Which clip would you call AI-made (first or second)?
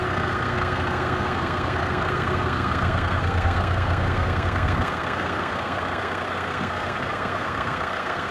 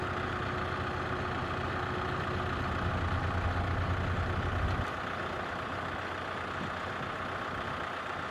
first